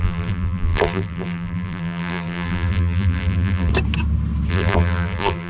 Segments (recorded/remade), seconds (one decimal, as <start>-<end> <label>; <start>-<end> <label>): 0.0-3.7 remade; 3.7-4.5 recorded; 4.5-5.5 remade